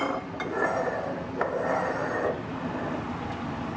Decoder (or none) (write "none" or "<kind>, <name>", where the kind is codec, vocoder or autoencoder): none